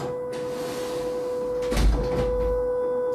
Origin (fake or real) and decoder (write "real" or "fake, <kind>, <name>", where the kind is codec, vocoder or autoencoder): real